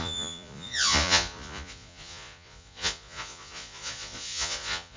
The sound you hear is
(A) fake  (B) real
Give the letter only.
A